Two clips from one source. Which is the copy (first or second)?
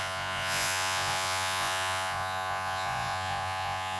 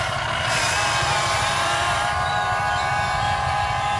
first